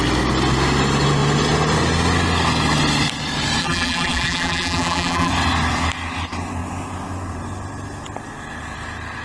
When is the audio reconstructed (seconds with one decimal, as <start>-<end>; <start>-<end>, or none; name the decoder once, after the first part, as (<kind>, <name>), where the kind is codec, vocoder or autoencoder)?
3.6-5.3 (vocoder, BigVGAN v2)